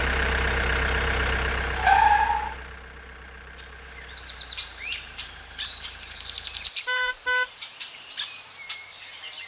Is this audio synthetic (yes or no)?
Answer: yes